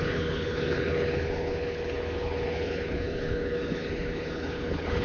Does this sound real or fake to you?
fake